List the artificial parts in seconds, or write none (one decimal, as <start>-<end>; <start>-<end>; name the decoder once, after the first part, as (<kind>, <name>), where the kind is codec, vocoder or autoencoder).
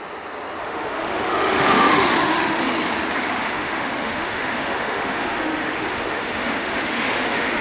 0.6-2.6 (autoencoder, DAC-VAE); 3.4-7.6